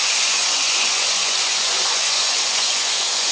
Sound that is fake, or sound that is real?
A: fake